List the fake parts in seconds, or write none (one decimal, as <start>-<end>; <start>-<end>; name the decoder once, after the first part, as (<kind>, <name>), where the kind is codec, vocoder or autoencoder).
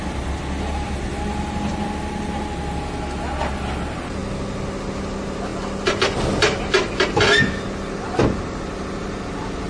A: none